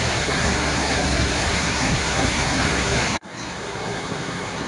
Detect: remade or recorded remade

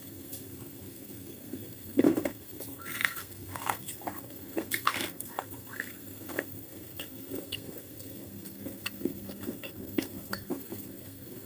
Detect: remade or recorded remade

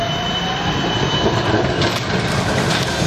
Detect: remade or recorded recorded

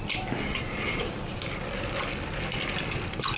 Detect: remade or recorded recorded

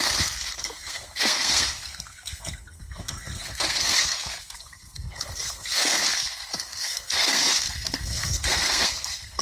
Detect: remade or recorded remade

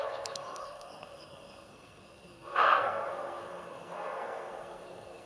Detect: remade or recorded remade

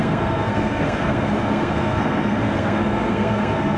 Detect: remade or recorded remade